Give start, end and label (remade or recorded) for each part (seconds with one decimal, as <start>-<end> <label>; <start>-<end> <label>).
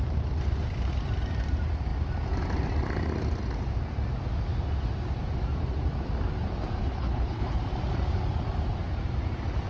0.0-6.8 recorded; 6.8-7.6 remade; 7.6-9.7 recorded